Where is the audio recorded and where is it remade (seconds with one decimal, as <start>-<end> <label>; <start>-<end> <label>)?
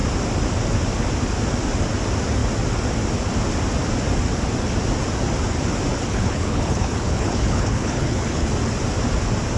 0.0-5.9 recorded; 5.9-8.5 remade; 8.5-9.6 recorded